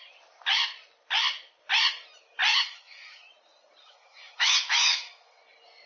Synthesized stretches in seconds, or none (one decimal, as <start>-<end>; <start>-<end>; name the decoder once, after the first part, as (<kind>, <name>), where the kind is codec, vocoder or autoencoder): 2.5-3.3 (autoencoder, DAC-VAE); 3.8-5.4